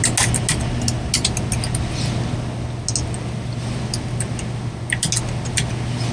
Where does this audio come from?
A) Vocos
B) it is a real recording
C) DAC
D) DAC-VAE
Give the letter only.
B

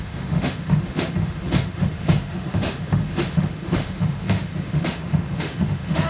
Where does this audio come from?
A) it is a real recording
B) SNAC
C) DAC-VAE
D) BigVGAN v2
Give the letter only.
C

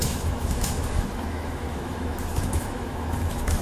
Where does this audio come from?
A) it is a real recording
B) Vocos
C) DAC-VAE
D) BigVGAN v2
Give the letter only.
C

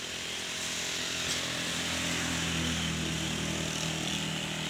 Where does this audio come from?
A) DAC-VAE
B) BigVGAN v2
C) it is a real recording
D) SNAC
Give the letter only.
C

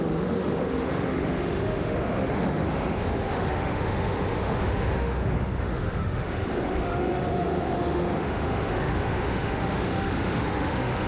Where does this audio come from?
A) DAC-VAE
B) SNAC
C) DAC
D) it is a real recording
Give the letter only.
A